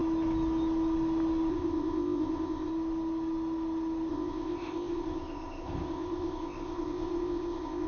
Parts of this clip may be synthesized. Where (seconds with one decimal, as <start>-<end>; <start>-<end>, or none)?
1.5-2.7; 4.1-7.9